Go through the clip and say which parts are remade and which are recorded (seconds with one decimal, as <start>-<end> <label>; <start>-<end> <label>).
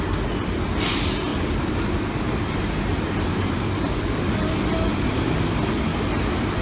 0.0-6.6 recorded